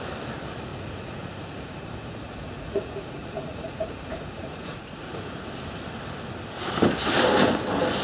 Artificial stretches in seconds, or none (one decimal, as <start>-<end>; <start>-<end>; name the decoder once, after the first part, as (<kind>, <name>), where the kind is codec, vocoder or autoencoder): 0.7-5.5 (vocoder, Vocos)

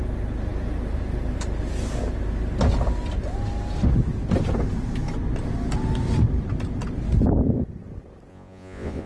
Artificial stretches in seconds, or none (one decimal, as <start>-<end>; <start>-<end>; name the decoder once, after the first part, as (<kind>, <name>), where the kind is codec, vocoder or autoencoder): 8.3-9.1 (vocoder, Vocos)

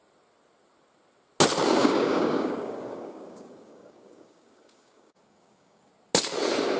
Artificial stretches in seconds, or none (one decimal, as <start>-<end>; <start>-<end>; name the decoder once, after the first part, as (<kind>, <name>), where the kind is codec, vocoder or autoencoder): 1.8-5.9 (codec, DAC)

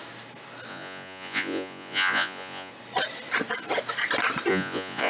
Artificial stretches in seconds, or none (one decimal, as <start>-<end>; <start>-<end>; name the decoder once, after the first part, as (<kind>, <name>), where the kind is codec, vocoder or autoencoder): 0.7-2.7 (vocoder, Vocos); 4.5-5.1

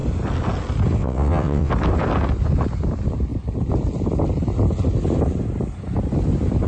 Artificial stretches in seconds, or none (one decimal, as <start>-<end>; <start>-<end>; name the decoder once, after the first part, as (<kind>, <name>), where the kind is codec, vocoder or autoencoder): 1.0-1.7 (vocoder, WaveNeXt)